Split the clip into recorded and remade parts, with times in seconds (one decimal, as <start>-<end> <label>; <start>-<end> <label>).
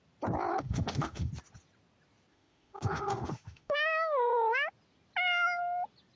0.0-0.5 recorded; 0.5-1.3 remade; 1.3-2.3 recorded; 2.3-4.7 remade; 4.7-6.2 recorded